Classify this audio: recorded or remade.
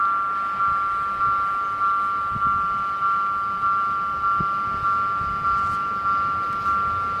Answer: recorded